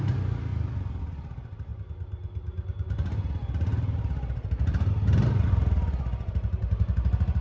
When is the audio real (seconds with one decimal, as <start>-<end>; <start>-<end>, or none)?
0.0-7.4

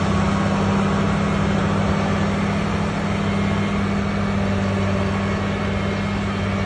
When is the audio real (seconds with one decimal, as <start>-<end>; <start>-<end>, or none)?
0.0-6.7

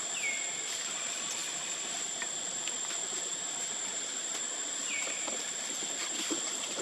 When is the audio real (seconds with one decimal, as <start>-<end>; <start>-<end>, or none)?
3.3-4.9

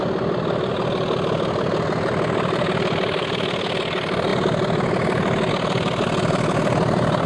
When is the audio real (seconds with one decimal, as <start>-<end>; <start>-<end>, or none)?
0.0-7.3